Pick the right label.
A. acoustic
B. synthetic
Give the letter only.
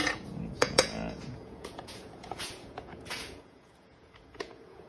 B